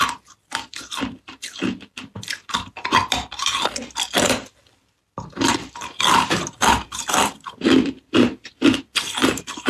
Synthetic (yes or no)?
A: yes